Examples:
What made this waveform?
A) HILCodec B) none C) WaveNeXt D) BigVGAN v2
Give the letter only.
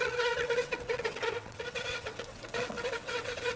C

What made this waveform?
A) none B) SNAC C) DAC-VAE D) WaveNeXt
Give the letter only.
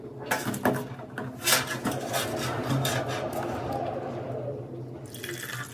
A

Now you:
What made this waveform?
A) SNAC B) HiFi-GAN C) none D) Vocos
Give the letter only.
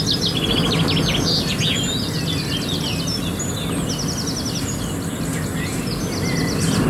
C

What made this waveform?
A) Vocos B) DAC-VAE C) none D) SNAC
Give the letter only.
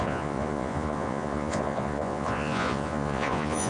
A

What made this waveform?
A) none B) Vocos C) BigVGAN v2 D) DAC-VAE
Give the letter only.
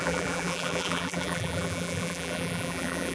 C